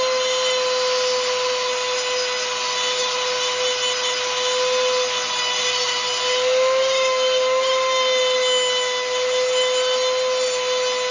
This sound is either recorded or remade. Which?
recorded